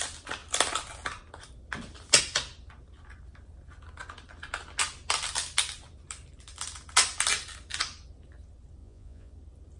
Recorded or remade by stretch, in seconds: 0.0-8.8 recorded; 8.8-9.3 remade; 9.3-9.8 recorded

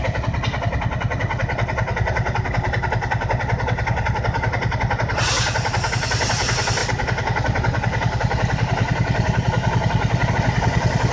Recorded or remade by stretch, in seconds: 0.0-11.1 recorded

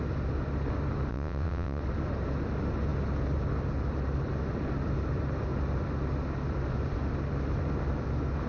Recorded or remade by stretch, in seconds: 0.0-1.1 recorded; 1.1-1.8 remade; 1.8-8.5 recorded